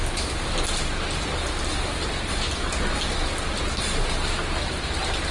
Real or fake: real